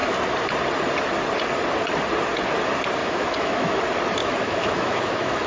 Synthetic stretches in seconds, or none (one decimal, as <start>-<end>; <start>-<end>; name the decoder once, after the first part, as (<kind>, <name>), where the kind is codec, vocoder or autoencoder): 3.0-3.8 (autoencoder, DAC-VAE); 4.2-5.5